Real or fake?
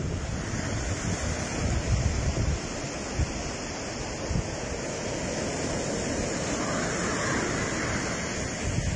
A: real